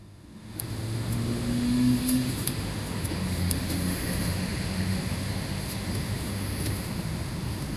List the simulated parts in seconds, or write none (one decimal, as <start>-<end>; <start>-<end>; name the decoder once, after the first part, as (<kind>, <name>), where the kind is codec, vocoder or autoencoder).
0.0-7.8 (autoencoder, DAC-VAE)